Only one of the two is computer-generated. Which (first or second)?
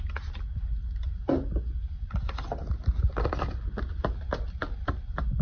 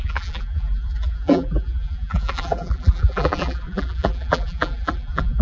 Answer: second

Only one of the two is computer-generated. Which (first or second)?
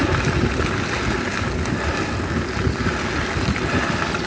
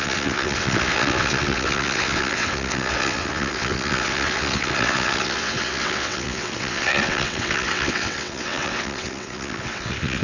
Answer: second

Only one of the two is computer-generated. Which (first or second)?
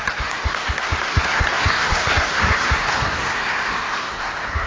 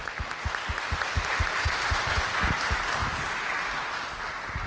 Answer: first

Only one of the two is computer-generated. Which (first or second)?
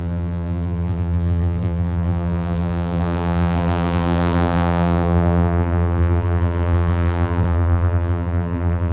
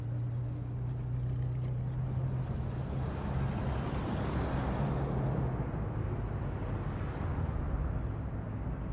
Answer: first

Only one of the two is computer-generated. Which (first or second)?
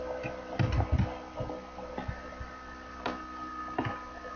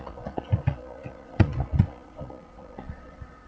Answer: second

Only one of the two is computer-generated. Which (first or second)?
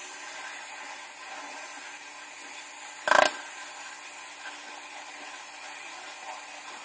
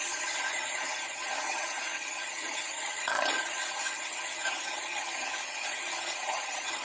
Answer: second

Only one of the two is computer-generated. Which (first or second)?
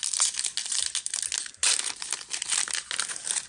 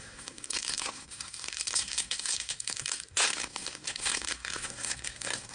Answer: second